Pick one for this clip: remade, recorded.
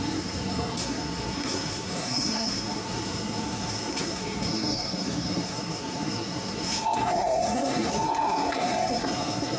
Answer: remade